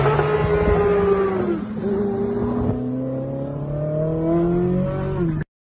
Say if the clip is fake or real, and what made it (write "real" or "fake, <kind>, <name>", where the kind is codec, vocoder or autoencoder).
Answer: real